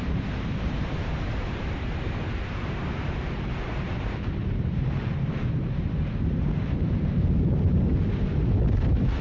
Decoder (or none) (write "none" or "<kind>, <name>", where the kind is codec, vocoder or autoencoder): vocoder, BigVGAN v2